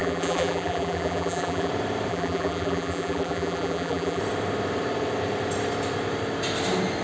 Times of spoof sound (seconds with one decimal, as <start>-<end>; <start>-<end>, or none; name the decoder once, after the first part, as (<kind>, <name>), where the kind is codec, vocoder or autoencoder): 0.0-1.7 (vocoder, BigVGAN v2); 2.1-4.2